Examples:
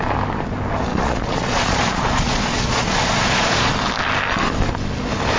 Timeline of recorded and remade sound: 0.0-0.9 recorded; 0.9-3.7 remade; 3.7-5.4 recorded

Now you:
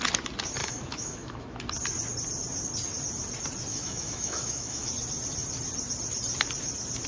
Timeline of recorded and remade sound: 0.0-0.6 recorded; 0.6-1.6 remade; 1.6-3.7 recorded; 3.7-4.9 remade; 4.9-7.1 recorded

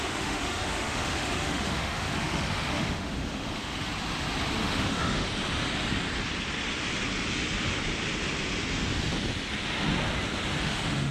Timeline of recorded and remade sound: 0.0-3.9 remade; 3.9-4.6 recorded; 4.6-5.3 remade; 5.3-10.6 recorded; 10.6-11.1 remade

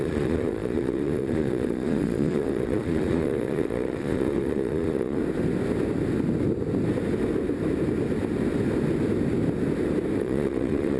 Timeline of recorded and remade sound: 0.0-5.2 remade; 5.2-10.2 recorded; 10.2-11.0 remade

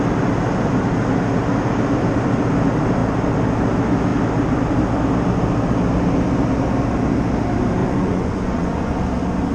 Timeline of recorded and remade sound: 0.0-7.8 recorded; 7.8-9.0 remade; 9.0-9.5 recorded

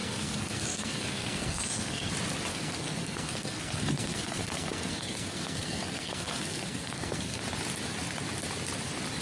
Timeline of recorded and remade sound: 0.0-2.1 remade; 2.1-2.5 recorded; 2.5-7.4 remade; 7.4-9.2 recorded

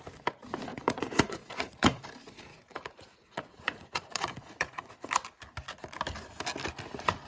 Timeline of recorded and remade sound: 0.0-0.7 recorded; 0.7-2.0 remade; 2.0-2.5 recorded; 2.5-4.9 remade; 4.9-7.3 recorded

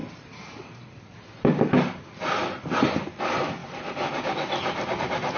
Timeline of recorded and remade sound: 0.0-5.4 recorded